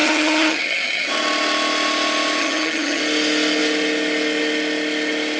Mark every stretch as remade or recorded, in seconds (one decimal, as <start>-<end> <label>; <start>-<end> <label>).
0.0-1.1 remade; 1.1-2.4 recorded; 2.4-3.0 remade; 3.0-5.4 recorded

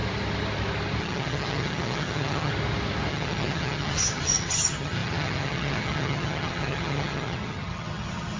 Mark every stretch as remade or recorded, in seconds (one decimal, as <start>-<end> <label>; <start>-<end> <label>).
0.0-1.0 recorded; 1.0-2.5 remade; 2.5-3.1 recorded; 3.1-8.4 remade

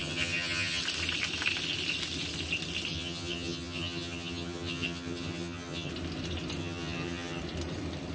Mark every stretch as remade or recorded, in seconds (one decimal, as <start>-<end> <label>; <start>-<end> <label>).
0.0-0.8 remade; 0.8-2.9 recorded; 2.9-5.9 remade; 5.9-6.6 recorded; 6.6-7.4 remade; 7.4-8.1 recorded

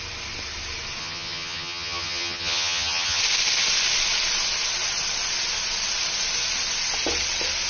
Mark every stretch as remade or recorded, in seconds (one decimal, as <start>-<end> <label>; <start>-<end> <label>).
0.0-1.0 recorded; 1.0-3.2 remade; 3.2-7.7 recorded

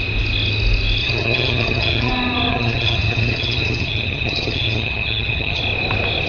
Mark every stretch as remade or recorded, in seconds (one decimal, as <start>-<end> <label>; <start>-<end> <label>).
0.0-1.0 recorded; 1.0-2.1 remade; 2.1-2.5 recorded; 2.5-5.6 remade; 5.6-6.3 recorded

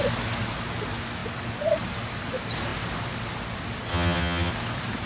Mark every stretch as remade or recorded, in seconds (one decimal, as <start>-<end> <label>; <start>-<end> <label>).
0.0-3.9 recorded; 3.9-4.5 remade; 4.5-5.1 recorded

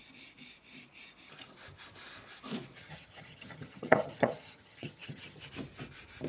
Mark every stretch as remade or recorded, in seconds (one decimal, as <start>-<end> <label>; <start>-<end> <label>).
0.0-2.8 recorded; 2.8-5.4 remade; 5.4-6.3 recorded

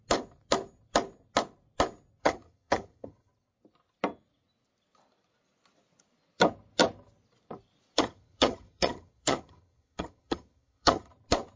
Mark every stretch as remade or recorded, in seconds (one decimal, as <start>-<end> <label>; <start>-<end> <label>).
0.0-2.2 recorded; 2.2-3.3 remade; 3.3-8.0 recorded; 8.0-11.1 remade; 11.1-11.6 recorded